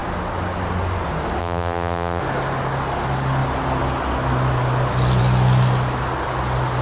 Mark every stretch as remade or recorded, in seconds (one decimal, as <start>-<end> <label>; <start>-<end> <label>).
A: 0.0-1.4 recorded; 1.4-2.2 remade; 2.2-6.8 recorded